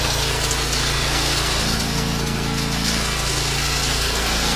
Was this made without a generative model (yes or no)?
no